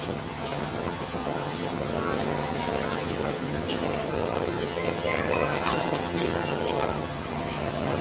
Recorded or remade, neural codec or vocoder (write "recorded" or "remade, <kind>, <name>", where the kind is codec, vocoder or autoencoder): remade, vocoder, HiFi-GAN